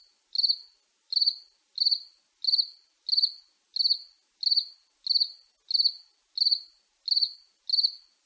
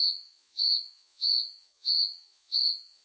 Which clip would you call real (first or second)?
first